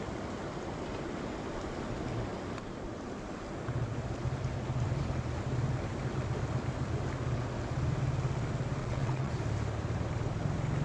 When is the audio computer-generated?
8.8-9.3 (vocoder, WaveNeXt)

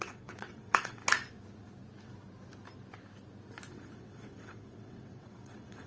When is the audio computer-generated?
0.0-1.0 (vocoder, WaveNeXt); 3.7-5.9